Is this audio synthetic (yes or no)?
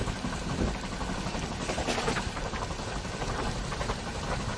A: no